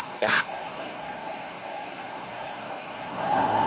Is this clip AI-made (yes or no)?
yes